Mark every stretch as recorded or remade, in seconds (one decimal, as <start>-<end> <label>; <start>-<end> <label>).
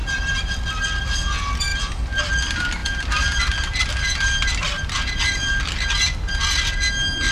0.0-0.6 remade; 0.6-1.7 recorded; 1.7-2.3 remade; 2.3-2.8 recorded; 2.8-5.5 remade; 5.5-7.3 recorded